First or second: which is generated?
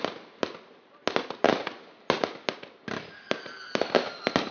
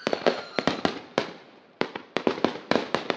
second